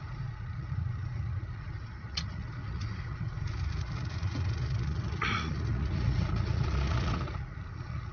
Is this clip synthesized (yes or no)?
yes